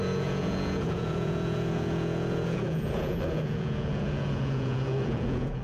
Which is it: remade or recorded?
remade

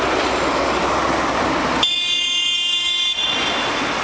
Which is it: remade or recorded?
recorded